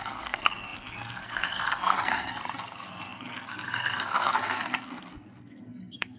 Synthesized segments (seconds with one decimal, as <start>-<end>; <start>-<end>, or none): 0.0-6.2